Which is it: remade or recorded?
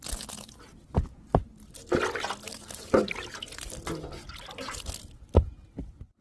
recorded